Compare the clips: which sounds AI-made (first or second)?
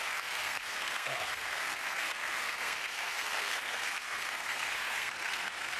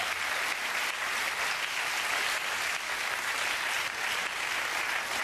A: first